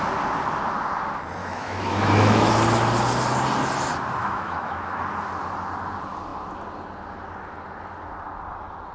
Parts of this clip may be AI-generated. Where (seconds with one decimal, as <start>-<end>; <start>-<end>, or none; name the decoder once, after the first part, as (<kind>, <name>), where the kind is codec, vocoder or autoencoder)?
1.4-2.5 (autoencoder, DAC-VAE); 4.2-5.0